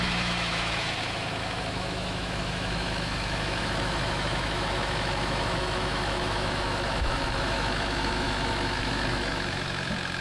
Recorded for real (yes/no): no